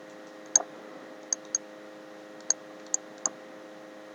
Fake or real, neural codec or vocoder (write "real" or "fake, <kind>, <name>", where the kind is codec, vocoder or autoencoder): real